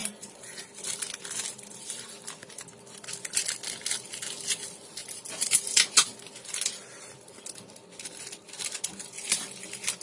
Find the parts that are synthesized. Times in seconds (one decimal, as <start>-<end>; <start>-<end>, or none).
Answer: 0.0-0.6